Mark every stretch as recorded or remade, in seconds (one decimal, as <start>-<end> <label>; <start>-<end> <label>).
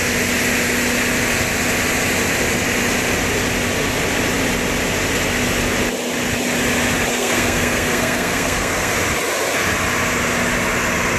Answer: 0.0-7.1 recorded; 7.1-8.9 remade; 8.9-11.2 recorded